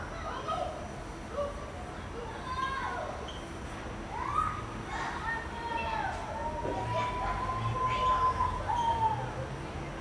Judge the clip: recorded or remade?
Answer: recorded